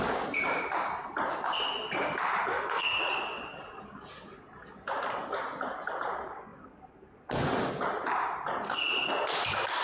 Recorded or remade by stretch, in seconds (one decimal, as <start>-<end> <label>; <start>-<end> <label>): 0.0-2.5 recorded; 2.5-3.0 remade; 3.0-9.8 recorded